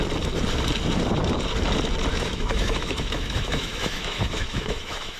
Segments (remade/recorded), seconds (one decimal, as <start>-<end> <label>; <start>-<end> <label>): 0.0-2.1 recorded; 2.1-5.2 remade

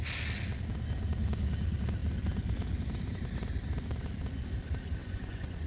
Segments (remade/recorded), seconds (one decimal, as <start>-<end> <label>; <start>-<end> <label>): 0.0-5.0 recorded; 5.0-5.7 remade

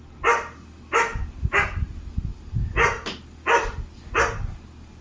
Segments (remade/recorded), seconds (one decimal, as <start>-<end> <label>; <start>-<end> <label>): 0.0-5.0 recorded

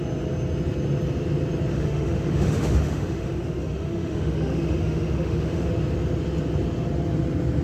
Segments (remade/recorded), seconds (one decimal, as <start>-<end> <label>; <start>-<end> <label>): 0.0-1.7 recorded; 1.7-5.7 remade; 5.7-7.6 recorded

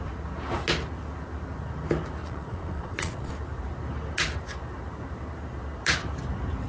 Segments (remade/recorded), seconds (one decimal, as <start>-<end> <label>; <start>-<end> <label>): 0.0-2.2 recorded; 2.2-3.3 remade; 3.3-6.7 recorded

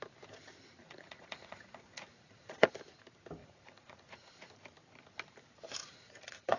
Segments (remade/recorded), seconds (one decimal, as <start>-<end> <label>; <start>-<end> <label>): 0.0-0.8 recorded; 0.8-2.7 remade; 2.7-3.4 recorded; 3.4-4.5 remade; 4.5-5.8 recorded; 5.8-6.6 remade

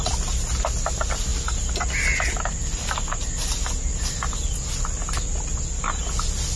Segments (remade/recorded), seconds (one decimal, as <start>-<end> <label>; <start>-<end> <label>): 0.0-6.6 recorded